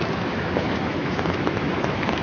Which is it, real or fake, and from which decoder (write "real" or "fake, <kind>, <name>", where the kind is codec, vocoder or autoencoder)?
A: fake, autoencoder, DAC-VAE